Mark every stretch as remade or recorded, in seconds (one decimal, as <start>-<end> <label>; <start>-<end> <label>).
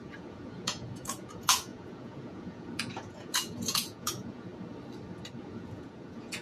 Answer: 0.0-4.5 remade; 4.5-5.4 recorded; 5.4-6.4 remade